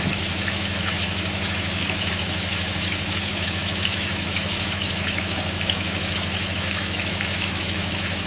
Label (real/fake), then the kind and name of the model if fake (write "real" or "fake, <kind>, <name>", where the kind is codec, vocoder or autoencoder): fake, autoencoder, DAC-VAE